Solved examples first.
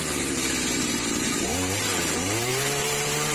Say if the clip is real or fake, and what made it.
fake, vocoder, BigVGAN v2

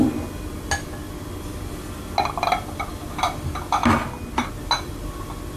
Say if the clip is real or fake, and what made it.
real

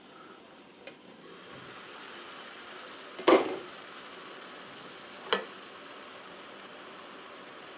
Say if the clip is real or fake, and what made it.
real